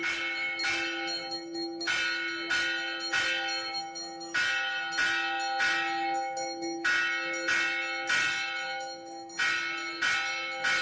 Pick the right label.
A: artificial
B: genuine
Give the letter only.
B